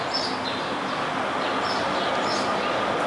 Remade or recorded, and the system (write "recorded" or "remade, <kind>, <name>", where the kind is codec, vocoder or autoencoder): recorded